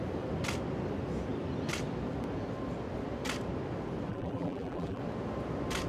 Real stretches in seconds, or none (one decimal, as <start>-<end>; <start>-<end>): 0.0-4.1; 5.0-5.9